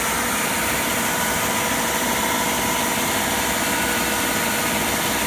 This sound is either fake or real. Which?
real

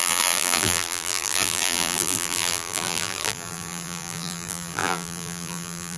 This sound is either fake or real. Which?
fake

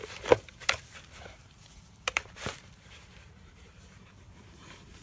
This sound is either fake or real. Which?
fake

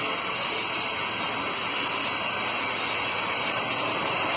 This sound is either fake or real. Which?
real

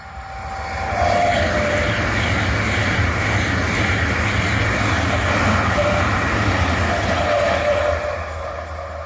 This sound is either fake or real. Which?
real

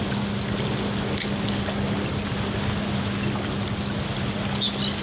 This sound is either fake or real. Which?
real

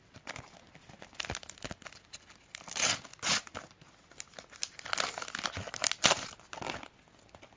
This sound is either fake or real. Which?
real